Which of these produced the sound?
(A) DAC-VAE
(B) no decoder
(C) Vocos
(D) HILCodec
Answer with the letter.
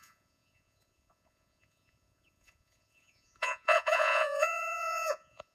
C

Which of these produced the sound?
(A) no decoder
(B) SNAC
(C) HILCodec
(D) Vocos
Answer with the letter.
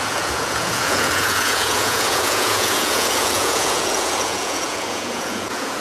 D